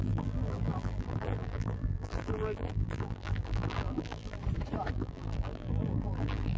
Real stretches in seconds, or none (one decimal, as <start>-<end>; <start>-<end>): 4.4-4.9